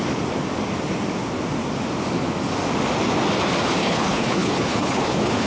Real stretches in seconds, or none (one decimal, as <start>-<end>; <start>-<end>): 0.0-3.8